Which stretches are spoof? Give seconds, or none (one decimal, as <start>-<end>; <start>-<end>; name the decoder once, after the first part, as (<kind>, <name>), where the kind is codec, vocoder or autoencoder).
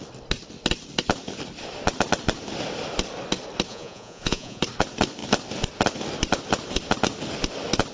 3.7-4.6 (vocoder, Vocos)